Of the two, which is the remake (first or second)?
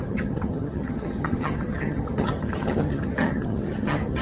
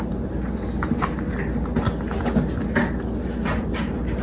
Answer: first